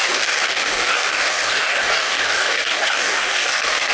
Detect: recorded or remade remade